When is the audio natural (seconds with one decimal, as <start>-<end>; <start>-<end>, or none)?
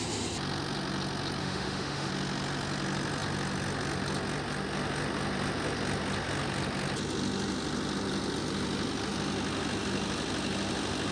0.0-1.4; 2.1-11.1